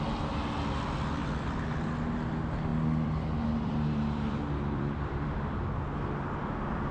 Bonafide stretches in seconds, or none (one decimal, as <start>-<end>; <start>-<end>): 0.0-2.7; 5.6-6.9